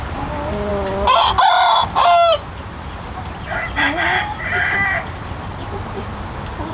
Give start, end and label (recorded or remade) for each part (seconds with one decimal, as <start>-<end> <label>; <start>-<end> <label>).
0.0-6.7 recorded